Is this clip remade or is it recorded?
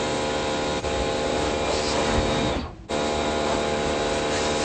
recorded